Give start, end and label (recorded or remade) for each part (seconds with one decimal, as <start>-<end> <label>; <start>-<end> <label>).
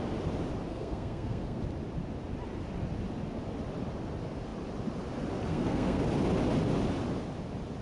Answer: 0.0-0.7 recorded; 0.7-1.6 remade; 1.6-5.5 recorded; 5.5-6.0 remade; 6.0-7.8 recorded